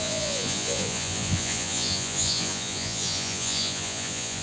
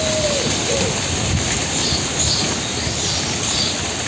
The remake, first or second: first